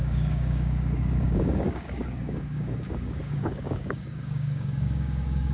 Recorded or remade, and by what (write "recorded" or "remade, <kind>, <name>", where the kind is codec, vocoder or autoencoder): remade, codec, DAC